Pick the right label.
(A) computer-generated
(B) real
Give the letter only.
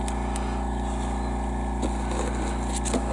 B